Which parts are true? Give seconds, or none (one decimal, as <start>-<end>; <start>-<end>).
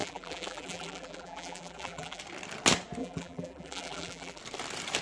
2.2-3.0; 4.4-5.0